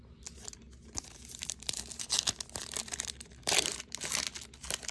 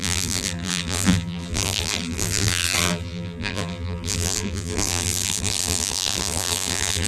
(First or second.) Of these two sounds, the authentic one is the first